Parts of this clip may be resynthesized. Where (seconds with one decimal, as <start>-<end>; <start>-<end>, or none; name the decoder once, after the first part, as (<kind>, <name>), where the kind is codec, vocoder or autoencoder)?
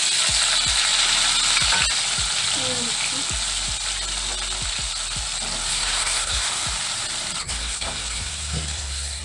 5.7-6.5 (codec, SNAC); 7.4-9.2